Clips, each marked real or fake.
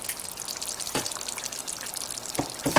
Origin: real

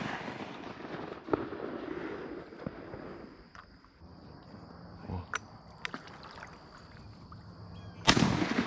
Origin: real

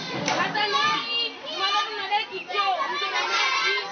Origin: real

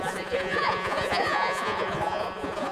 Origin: fake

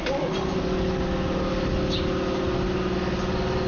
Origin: real